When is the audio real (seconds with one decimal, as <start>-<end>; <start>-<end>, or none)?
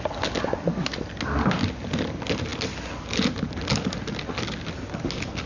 0.0-5.5